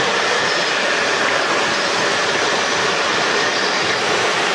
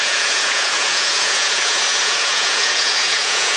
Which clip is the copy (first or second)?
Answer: second